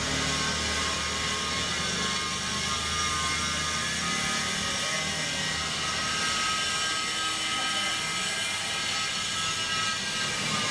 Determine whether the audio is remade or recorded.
recorded